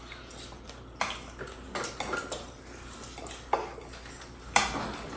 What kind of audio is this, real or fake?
real